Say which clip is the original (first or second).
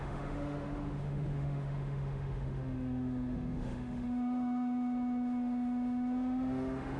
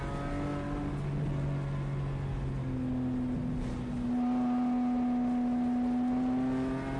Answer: second